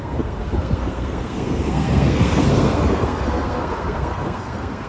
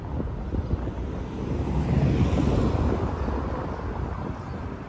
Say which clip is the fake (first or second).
first